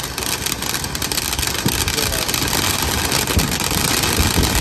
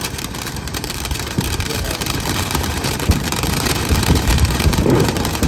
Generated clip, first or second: second